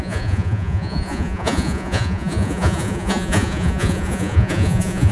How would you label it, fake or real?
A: fake